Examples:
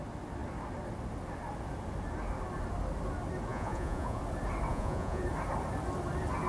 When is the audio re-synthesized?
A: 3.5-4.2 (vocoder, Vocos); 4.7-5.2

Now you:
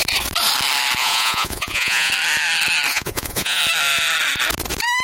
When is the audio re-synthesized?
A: 1.0-2.1 (vocoder, Vocos); 2.9-3.6

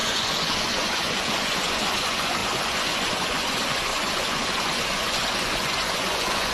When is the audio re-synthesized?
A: 0.0-6.5 (vocoder, Vocos)

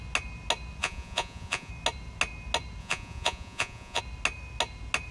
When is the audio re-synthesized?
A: 0.8-1.7 (vocoder, Vocos); 2.8-4.0